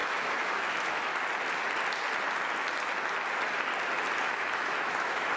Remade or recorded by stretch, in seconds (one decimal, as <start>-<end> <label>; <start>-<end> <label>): 0.0-1.1 remade; 1.1-4.3 recorded; 4.3-5.4 remade